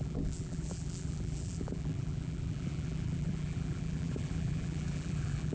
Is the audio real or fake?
fake